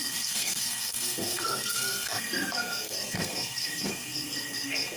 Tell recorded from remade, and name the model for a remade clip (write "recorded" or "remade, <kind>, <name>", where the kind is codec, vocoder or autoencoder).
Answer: remade, codec, SNAC